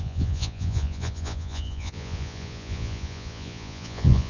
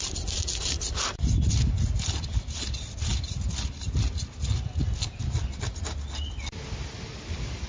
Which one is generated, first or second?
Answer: first